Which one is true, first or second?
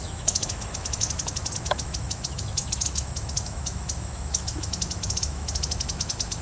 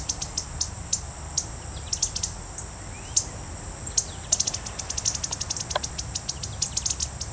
second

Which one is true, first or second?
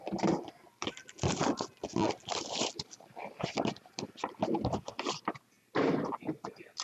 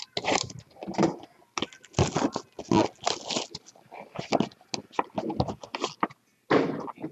second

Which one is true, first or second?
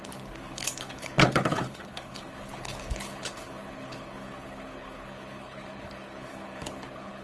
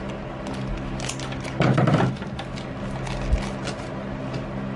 second